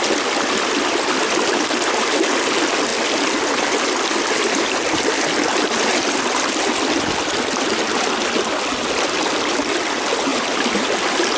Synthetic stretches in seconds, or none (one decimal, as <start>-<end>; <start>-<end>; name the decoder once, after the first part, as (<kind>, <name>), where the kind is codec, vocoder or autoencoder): none

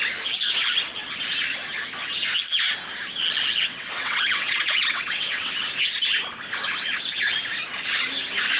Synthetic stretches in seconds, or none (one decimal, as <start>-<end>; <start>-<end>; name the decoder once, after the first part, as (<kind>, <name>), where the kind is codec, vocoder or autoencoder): 3.7-5.7 (vocoder, WaveNeXt)

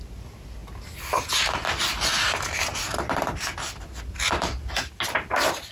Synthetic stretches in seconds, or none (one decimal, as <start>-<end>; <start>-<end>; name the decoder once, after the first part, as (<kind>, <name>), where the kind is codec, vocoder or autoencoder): none

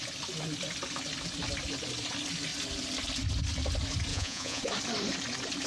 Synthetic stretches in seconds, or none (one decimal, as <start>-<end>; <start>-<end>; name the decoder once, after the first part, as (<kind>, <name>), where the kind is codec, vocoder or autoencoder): 4.1-4.6 (vocoder, Vocos)

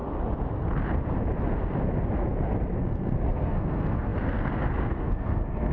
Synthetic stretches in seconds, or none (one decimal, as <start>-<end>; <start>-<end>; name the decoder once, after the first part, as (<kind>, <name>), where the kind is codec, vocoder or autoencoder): 2.8-5.7 (codec, SNAC)

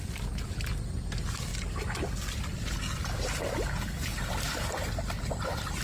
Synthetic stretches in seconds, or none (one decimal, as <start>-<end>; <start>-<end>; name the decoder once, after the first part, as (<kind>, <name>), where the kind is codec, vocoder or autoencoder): none